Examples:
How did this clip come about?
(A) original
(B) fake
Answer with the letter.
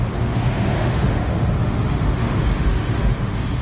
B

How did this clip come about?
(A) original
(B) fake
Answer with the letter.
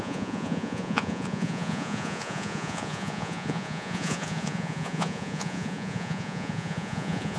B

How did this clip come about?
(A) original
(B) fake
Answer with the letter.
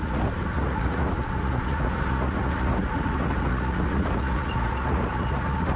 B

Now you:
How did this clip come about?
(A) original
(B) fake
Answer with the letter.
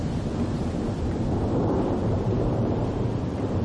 B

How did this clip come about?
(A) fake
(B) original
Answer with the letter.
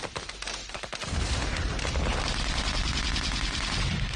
B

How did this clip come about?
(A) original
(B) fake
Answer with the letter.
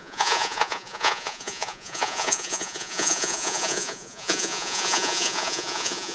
B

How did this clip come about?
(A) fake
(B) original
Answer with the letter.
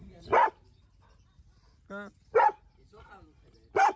B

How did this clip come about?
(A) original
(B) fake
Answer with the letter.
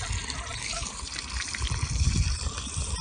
A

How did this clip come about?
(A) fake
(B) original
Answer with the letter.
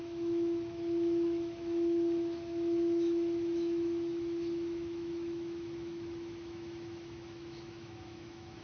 A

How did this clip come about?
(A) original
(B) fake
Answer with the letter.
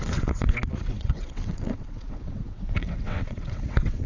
B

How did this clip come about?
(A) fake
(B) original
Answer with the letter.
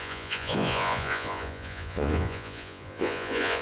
A